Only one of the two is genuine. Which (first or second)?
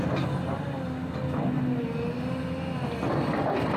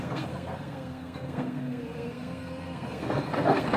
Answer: first